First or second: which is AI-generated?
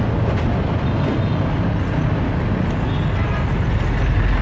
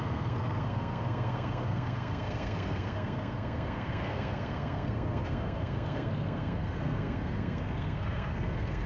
second